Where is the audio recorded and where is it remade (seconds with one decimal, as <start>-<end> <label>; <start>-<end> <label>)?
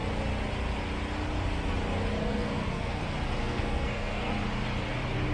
0.0-2.2 recorded; 2.2-3.0 remade; 3.0-3.4 recorded; 3.4-4.3 remade; 4.3-5.3 recorded